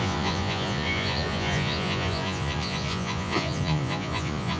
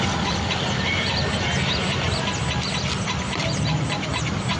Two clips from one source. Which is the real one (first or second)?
second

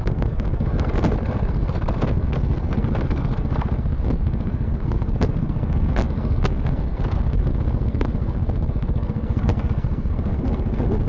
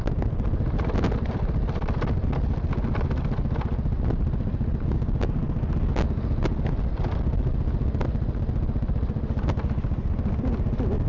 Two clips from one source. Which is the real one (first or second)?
second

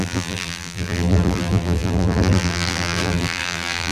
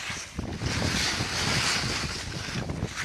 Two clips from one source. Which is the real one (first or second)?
second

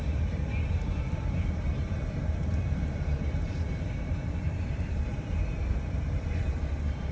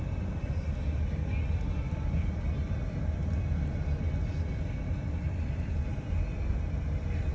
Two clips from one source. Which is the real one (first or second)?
second